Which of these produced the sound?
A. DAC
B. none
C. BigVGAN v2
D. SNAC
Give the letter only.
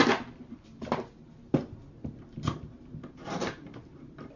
B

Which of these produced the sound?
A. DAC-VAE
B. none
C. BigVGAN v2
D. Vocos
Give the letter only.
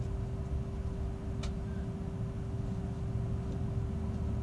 B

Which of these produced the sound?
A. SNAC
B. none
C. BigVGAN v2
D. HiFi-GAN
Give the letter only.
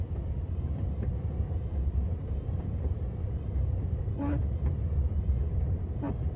C